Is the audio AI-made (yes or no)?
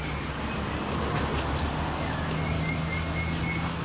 no